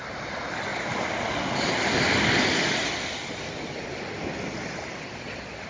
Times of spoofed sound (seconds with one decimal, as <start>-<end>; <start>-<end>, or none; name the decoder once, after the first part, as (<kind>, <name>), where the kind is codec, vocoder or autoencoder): 0.7-4.1 (vocoder, BigVGAN v2)

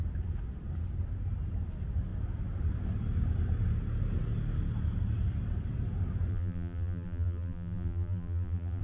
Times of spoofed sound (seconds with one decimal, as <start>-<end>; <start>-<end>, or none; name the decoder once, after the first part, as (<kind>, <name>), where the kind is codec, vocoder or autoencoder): 6.3-8.8 (vocoder, BigVGAN v2)

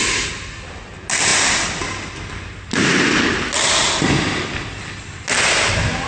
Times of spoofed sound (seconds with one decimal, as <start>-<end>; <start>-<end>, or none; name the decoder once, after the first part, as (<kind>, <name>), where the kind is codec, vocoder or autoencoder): none

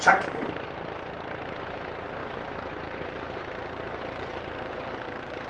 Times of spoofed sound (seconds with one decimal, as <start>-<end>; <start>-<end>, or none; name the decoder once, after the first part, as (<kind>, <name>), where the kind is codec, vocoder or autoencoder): 2.2-5.5 (vocoder, BigVGAN v2)

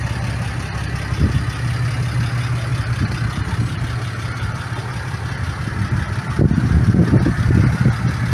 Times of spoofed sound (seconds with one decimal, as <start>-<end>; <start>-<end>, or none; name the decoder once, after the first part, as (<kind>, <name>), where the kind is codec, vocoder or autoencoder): 2.7-6.1 (vocoder, BigVGAN v2)

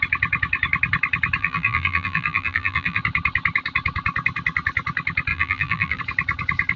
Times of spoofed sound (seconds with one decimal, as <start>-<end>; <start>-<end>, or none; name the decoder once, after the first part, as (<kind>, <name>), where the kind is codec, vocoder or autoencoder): 1.4-3.0 (vocoder, BigVGAN v2); 5.3-6.0